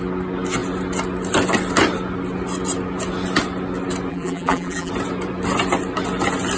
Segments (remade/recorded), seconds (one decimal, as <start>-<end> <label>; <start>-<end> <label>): 0.0-4.1 recorded; 4.1-4.9 remade; 4.9-6.6 recorded